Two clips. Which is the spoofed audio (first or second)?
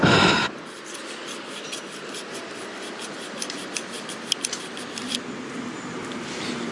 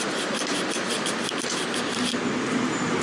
first